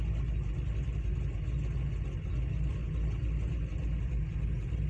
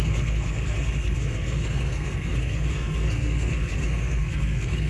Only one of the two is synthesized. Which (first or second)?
second